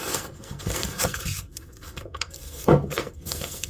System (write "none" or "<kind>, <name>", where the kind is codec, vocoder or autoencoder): codec, SNAC